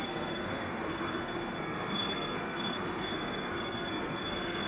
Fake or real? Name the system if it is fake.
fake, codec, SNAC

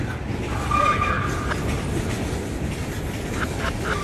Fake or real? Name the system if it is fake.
real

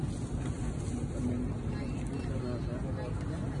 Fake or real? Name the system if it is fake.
real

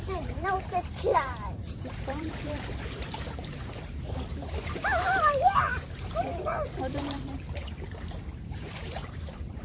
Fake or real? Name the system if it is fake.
fake, vocoder, BigVGAN v2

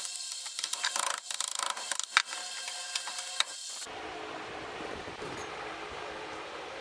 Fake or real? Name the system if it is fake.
real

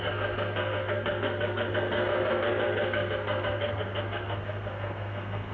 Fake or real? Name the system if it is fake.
fake, codec, SNAC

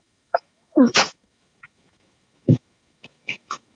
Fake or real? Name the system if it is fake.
fake, autoencoder, DAC-VAE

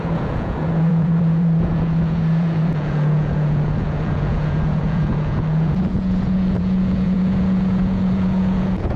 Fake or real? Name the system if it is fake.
fake, vocoder, Vocos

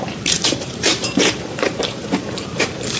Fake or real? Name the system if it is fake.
fake, vocoder, BigVGAN v2